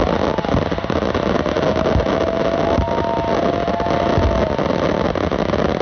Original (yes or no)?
yes